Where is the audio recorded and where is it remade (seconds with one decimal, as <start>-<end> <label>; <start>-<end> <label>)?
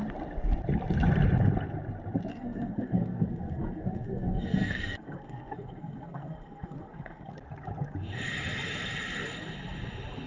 0.0-2.3 recorded; 2.3-7.3 remade; 7.3-10.3 recorded